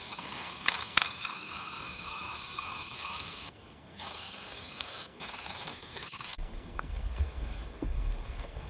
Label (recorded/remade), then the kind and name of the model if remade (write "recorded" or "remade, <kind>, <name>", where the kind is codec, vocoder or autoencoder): remade, codec, SNAC